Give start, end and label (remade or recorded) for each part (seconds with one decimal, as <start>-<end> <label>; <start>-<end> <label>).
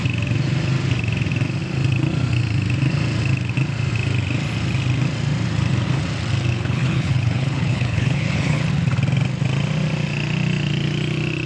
0.0-6.5 recorded; 6.5-8.6 remade; 8.6-11.5 recorded